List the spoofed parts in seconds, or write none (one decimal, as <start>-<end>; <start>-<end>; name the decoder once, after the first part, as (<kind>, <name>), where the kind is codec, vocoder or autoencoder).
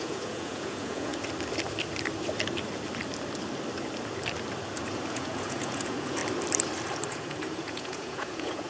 0.0-1.1 (vocoder, Vocos); 5.1-6.2; 7.1-8.7